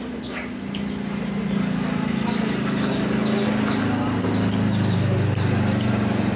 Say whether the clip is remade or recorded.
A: recorded